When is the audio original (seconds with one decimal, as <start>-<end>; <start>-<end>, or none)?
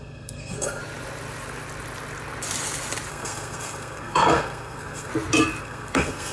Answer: 0.8-3.1; 5.1-5.6